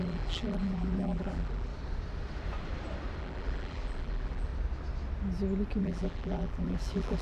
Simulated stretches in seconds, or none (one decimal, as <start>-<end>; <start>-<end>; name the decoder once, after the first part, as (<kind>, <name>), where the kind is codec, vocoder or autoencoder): 0.0-1.7 (vocoder, BigVGAN v2); 3.2-4.5; 5.8-7.2